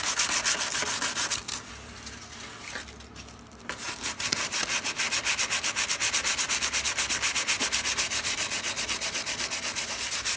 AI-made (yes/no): yes